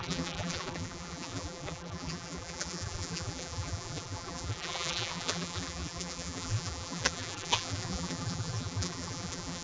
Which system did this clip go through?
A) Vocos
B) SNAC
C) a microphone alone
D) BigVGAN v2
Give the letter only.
D